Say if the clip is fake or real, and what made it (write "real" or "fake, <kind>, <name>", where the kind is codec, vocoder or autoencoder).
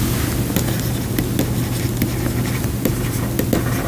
real